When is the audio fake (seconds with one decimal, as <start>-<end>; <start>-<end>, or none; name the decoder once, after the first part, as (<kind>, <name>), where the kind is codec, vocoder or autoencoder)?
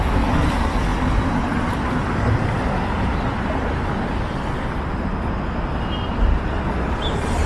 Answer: none